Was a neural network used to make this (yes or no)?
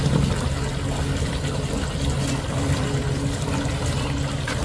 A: no